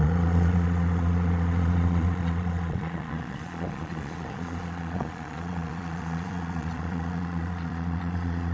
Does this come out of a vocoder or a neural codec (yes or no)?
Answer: yes